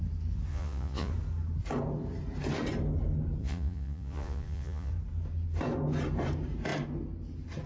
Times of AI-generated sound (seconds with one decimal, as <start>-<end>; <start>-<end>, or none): 0.5-1.1; 3.4-4.9